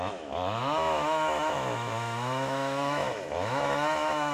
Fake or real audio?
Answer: fake